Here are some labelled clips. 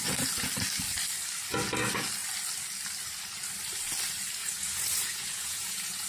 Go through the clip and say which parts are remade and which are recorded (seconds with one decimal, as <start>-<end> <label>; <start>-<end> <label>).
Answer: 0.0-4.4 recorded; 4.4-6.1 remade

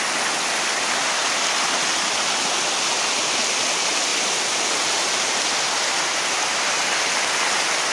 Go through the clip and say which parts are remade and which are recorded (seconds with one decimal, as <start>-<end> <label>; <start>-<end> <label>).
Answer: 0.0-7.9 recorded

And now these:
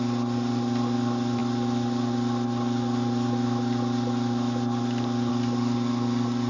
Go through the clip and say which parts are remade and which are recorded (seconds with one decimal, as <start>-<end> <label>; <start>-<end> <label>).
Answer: 0.0-6.5 recorded